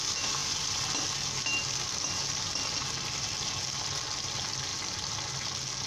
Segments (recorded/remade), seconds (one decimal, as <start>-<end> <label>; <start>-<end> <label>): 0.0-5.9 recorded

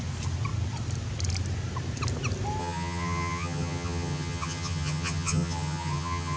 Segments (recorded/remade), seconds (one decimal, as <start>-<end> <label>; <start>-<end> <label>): 0.0-2.6 recorded; 2.6-6.4 remade

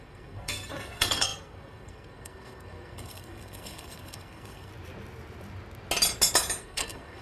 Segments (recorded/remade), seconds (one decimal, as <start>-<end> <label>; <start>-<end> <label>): 0.0-4.7 remade; 4.7-6.6 recorded; 6.6-7.2 remade

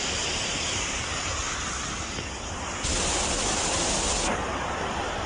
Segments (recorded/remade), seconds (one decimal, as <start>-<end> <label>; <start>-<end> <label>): 0.0-1.4 remade; 1.4-4.6 recorded; 4.6-5.3 remade

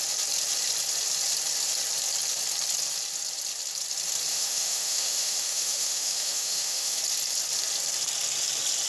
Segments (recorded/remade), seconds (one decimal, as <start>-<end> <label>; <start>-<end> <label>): 0.0-4.3 recorded; 4.3-7.0 remade; 7.0-8.9 recorded

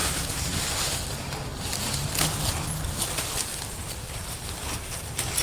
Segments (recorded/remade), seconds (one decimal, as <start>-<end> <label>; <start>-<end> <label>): 0.0-0.6 remade; 0.6-1.5 recorded; 1.5-3.0 remade; 3.0-3.5 recorded; 3.5-5.0 remade; 5.0-5.4 recorded